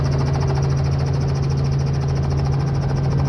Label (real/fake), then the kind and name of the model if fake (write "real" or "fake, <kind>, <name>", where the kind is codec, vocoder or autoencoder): real